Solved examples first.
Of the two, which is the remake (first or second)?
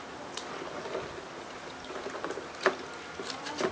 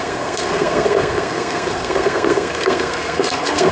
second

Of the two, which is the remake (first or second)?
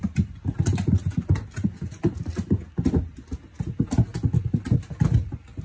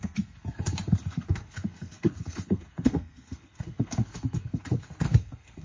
second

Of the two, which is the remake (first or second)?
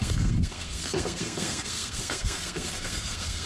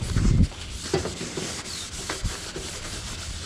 first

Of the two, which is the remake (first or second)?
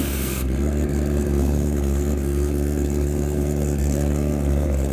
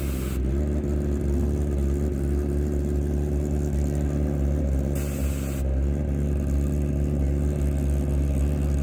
first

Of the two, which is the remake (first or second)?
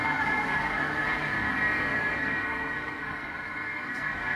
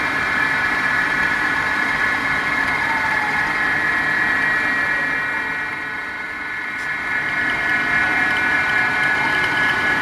first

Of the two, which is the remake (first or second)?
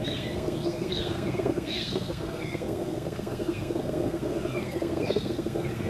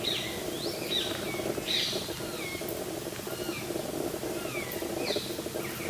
first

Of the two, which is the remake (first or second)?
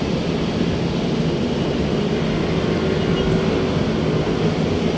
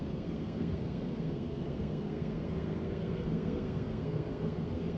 second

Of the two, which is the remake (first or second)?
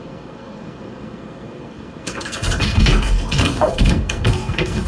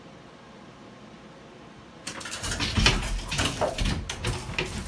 first